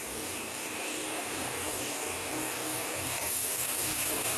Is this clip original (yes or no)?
no